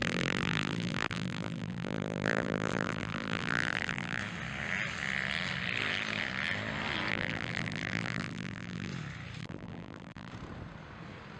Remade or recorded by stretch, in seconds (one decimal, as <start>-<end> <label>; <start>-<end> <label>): 0.0-4.2 remade; 4.2-7.1 recorded; 7.1-8.9 remade; 8.9-9.4 recorded; 9.4-10.3 remade; 10.3-11.4 recorded